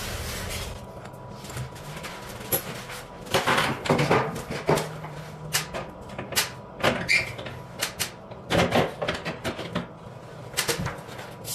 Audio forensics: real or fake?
real